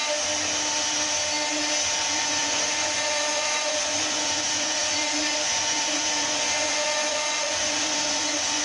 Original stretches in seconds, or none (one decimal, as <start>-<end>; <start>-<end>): 0.0-1.9